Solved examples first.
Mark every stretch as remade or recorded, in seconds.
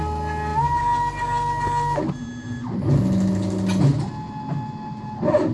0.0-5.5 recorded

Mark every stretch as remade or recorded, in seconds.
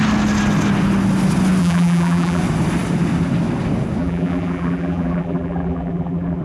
0.0-1.6 recorded; 1.6-2.4 remade; 2.4-4.0 recorded; 4.0-6.4 remade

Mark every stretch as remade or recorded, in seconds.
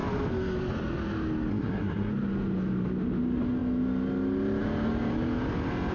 0.0-1.5 recorded; 1.5-2.1 remade; 2.1-5.9 recorded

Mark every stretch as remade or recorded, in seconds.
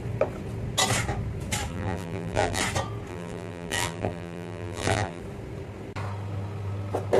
0.0-1.7 recorded; 1.7-2.6 remade; 2.6-3.1 recorded; 3.1-5.2 remade; 5.2-7.2 recorded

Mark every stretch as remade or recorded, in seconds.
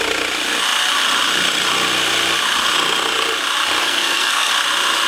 0.0-3.8 recorded; 3.8-4.5 remade; 4.5-5.1 recorded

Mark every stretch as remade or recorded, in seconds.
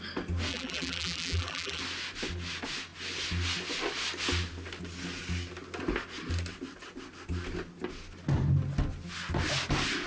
0.0-0.5 recorded; 0.5-1.8 remade; 1.8-10.1 recorded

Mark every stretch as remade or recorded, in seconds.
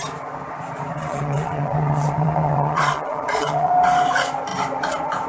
0.0-0.9 recorded; 0.9-3.7 remade; 3.7-5.3 recorded